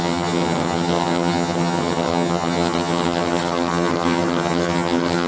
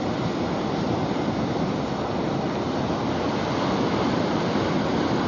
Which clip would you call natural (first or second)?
second